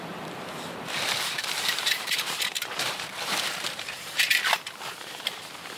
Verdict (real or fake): fake